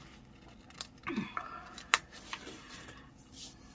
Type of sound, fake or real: real